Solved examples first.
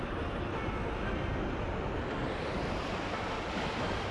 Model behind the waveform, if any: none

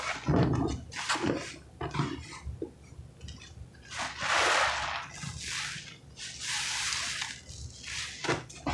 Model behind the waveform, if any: none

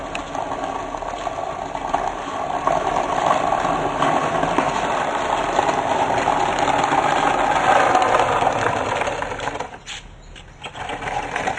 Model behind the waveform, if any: none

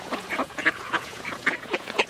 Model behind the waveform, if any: vocoder, Vocos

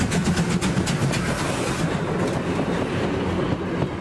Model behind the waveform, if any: none